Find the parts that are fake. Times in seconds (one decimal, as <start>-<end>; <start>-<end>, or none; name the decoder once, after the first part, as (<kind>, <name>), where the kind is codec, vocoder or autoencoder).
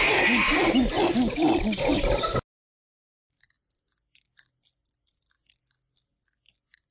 none